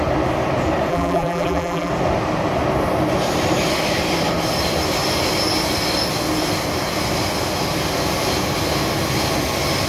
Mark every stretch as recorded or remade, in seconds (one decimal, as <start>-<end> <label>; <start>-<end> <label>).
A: 0.0-0.9 recorded; 0.9-1.9 remade; 1.9-9.9 recorded